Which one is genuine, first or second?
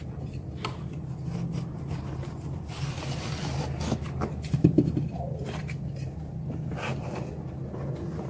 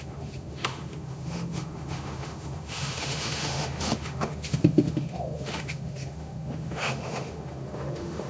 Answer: first